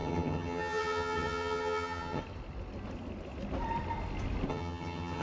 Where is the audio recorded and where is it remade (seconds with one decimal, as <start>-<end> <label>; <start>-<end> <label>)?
0.0-2.2 remade; 2.2-4.5 recorded; 4.5-5.2 remade